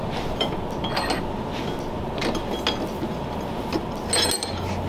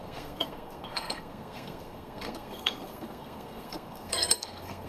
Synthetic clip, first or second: second